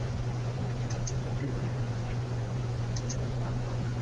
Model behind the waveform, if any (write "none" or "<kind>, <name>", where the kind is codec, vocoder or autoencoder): vocoder, Vocos